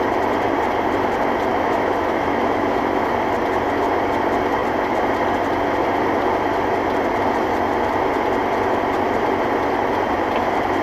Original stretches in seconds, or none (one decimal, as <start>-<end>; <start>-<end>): 0.0-1.5; 3.1-10.8